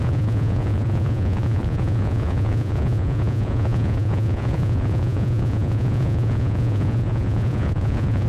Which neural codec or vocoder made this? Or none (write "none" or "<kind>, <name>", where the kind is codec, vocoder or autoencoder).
vocoder, Vocos